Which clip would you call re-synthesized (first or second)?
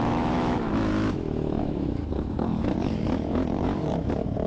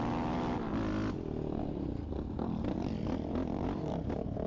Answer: first